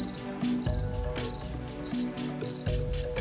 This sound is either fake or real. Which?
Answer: real